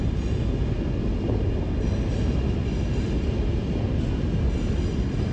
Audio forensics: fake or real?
real